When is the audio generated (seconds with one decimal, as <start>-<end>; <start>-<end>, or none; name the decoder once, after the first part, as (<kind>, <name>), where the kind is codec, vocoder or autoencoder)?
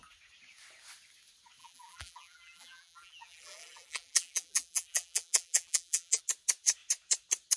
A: 1.6-6.2 (vocoder, BigVGAN v2)